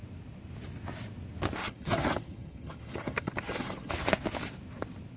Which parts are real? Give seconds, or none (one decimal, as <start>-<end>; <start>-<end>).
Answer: 0.0-1.6; 3.9-5.2